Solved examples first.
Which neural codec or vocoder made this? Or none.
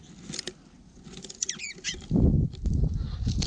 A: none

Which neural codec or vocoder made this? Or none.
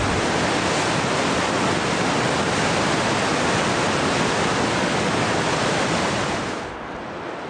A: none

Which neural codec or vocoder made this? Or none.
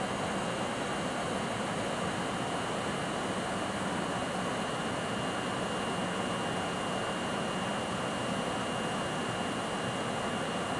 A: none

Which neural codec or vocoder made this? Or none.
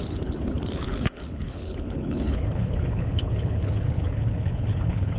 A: codec, HILCodec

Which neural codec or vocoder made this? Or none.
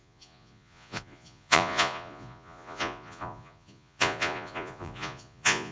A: vocoder, Vocos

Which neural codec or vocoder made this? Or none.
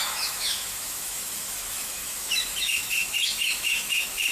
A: autoencoder, DAC-VAE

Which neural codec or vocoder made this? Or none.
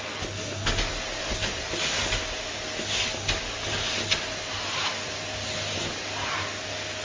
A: none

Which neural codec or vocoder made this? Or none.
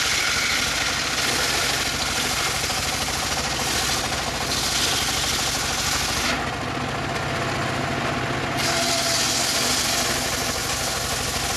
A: none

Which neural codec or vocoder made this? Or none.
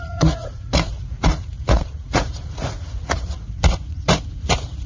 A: vocoder, Vocos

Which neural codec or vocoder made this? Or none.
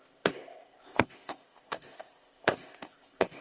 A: codec, ZipCodec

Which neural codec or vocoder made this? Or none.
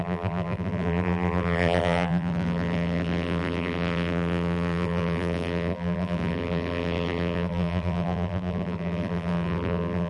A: vocoder, BigVGAN v2